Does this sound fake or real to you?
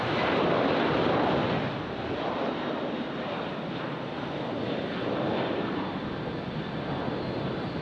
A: real